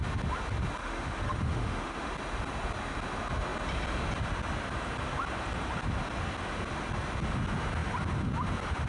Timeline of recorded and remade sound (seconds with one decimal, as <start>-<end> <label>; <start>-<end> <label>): 0.0-0.8 recorded; 0.8-2.1 remade; 2.1-8.9 recorded